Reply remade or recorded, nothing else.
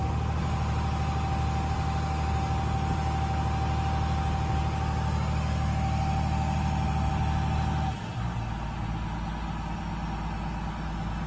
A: recorded